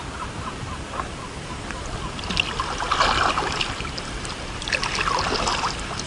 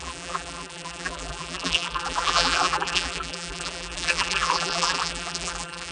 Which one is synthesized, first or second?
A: second